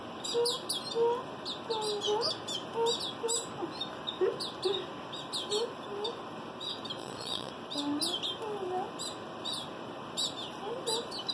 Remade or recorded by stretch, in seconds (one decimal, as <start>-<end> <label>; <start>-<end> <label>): 0.0-7.0 recorded; 7.0-7.5 remade; 7.5-11.3 recorded